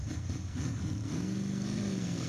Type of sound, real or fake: fake